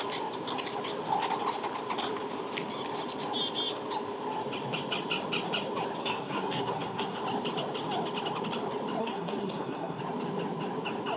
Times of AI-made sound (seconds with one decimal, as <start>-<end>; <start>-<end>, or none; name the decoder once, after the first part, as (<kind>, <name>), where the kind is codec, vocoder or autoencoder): 6.0-7.2 (codec, SNAC); 9.0-10.0